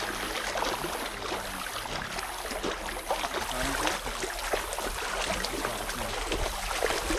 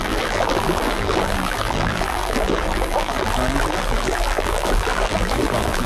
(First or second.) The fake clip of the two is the second